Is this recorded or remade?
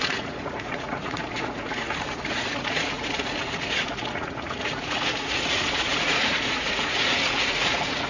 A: remade